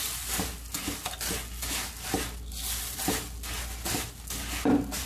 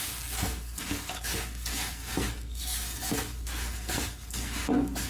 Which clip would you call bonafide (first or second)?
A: first